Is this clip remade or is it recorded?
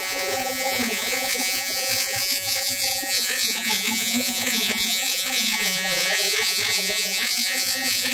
remade